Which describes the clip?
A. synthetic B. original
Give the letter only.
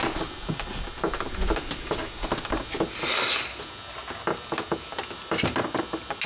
B